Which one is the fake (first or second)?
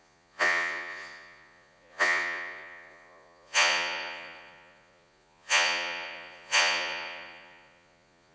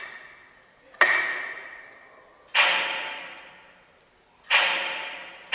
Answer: first